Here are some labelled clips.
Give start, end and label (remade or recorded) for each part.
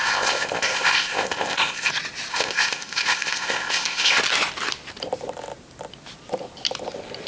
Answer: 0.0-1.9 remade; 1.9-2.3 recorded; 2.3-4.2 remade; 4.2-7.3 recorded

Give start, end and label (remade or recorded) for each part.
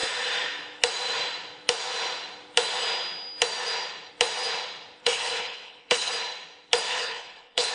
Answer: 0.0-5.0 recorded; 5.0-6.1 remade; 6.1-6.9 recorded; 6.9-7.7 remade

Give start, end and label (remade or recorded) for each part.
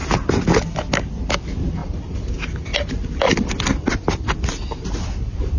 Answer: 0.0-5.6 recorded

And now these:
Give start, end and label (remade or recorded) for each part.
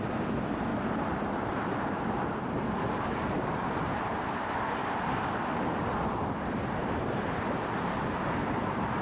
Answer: 0.0-4.8 remade; 4.8-6.8 recorded; 6.8-9.0 remade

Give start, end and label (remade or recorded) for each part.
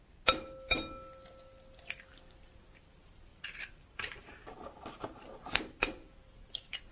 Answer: 0.0-3.3 recorded; 3.3-6.9 remade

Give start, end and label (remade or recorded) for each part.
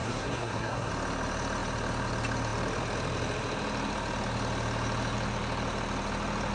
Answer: 0.0-0.9 remade; 0.9-6.5 recorded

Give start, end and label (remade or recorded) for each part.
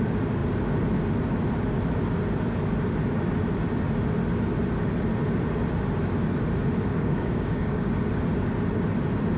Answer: 0.0-6.9 recorded; 6.9-7.9 remade; 7.9-9.4 recorded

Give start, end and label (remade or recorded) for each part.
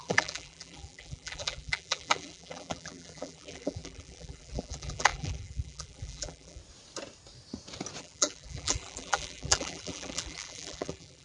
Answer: 0.0-6.6 remade; 6.6-8.0 recorded; 8.0-11.2 remade